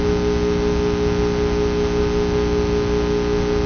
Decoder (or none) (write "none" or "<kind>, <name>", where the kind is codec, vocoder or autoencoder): none